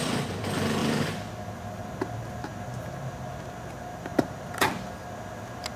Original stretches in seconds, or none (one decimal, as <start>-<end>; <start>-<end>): 0.0-0.8; 1.9-4.1; 4.9-5.8